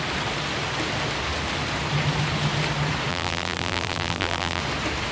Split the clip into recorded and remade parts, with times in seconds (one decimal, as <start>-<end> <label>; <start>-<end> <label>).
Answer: 0.0-3.1 recorded; 3.1-4.6 remade; 4.6-5.1 recorded